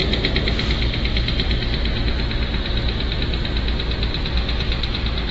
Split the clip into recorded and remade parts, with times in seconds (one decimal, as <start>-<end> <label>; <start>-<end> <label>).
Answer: 0.0-5.3 recorded